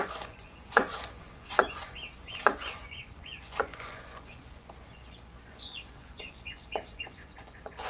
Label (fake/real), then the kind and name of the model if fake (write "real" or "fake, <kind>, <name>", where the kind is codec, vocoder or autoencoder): fake, vocoder, Vocos